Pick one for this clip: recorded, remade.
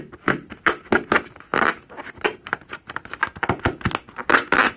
recorded